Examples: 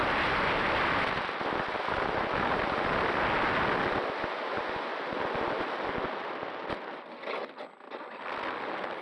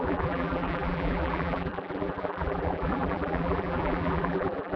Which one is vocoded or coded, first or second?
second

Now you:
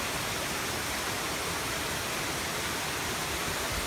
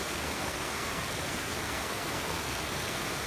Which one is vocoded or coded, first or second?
second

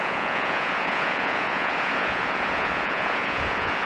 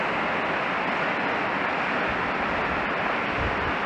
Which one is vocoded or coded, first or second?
first